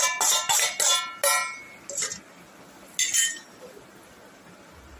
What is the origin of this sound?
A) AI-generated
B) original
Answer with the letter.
B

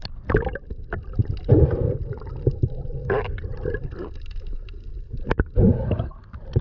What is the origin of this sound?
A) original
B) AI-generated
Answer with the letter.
B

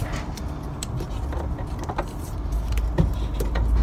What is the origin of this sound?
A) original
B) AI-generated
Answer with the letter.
A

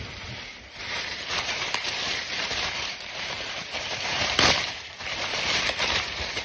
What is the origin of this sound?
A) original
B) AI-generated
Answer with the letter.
B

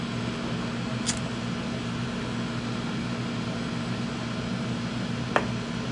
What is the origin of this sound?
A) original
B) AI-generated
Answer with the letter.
A